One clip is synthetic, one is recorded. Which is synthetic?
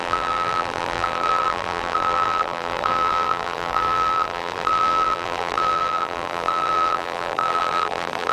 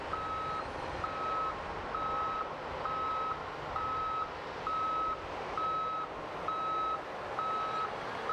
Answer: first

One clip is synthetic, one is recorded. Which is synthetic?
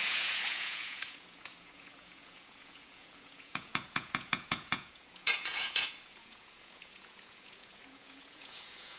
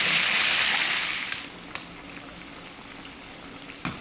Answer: first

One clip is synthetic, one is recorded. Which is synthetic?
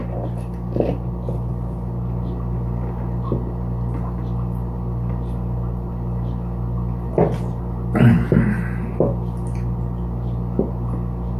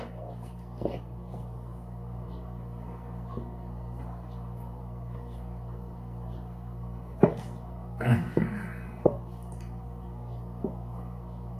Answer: second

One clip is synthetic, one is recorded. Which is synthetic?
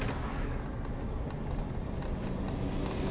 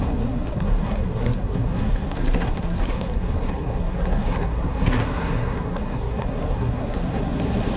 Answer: second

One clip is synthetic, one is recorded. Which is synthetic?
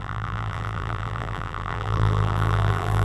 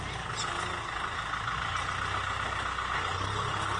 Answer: first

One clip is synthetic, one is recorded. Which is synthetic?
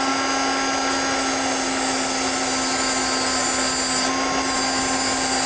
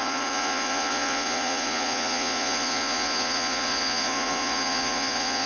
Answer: second